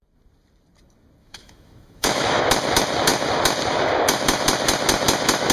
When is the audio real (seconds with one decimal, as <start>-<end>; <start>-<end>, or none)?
0.0-1.2; 2.4-5.5